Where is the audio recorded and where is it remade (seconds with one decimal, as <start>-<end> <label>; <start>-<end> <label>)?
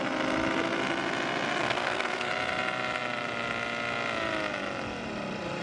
0.0-1.6 recorded; 1.6-2.3 remade; 2.3-5.6 recorded